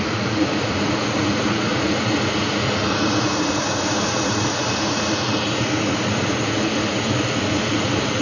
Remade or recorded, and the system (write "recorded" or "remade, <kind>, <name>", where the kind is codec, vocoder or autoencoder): remade, vocoder, Vocos